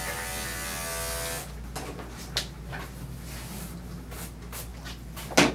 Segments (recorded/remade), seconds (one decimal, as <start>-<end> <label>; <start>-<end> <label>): 0.0-5.5 recorded